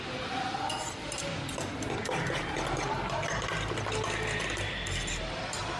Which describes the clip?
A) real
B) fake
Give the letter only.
A